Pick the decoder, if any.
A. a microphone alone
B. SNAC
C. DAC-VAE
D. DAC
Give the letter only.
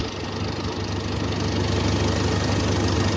A